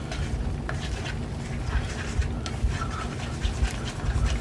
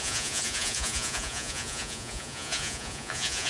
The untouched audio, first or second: first